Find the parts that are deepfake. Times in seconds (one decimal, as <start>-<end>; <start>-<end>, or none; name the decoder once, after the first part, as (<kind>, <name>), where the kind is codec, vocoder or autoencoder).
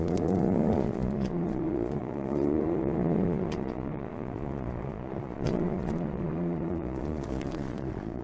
0.0-8.2 (vocoder, Vocos)